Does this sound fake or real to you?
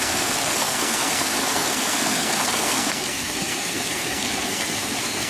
fake